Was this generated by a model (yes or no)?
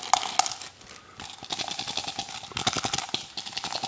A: no